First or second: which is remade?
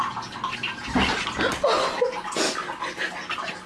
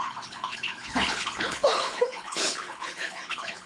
second